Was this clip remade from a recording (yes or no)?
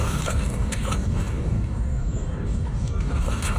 yes